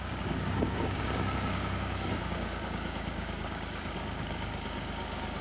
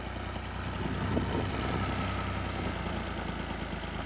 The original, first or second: second